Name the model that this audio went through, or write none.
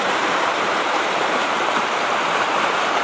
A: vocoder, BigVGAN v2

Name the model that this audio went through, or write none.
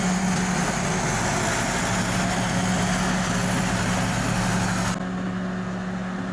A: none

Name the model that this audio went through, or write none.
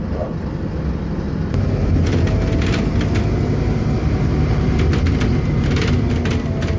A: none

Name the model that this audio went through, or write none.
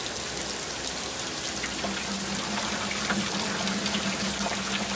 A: none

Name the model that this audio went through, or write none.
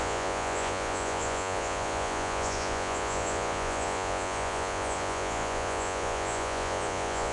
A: vocoder, Vocos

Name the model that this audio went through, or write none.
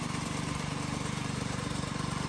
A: vocoder, BigVGAN v2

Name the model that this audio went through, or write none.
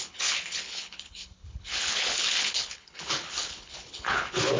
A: codec, HILCodec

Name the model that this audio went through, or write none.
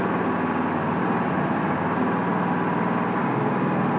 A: none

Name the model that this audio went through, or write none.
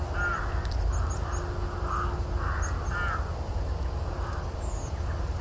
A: none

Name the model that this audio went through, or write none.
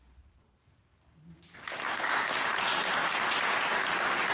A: vocoder, BigVGAN v2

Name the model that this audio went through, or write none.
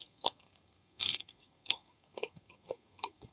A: codec, SNAC